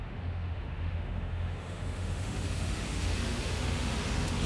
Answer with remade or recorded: remade